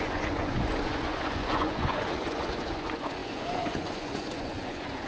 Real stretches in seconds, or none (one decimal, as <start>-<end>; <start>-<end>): none